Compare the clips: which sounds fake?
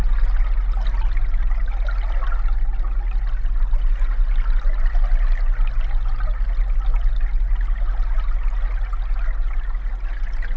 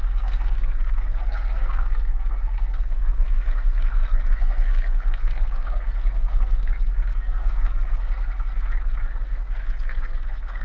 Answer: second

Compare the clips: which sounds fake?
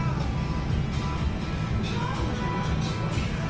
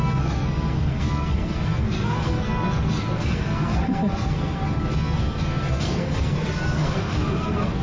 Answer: second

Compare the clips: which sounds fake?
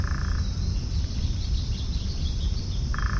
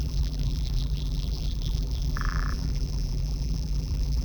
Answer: second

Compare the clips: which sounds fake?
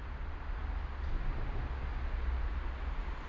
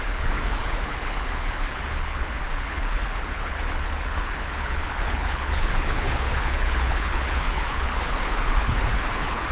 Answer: second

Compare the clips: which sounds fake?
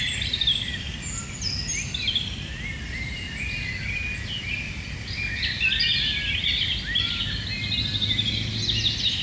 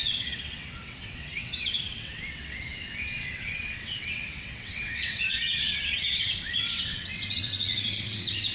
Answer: second